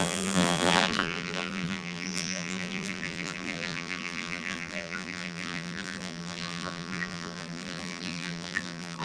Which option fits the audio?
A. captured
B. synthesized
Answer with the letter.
B